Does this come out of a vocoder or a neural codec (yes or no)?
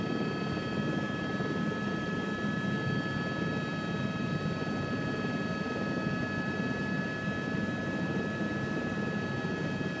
no